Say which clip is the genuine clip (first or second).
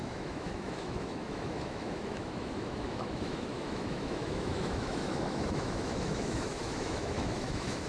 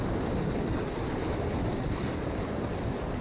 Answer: second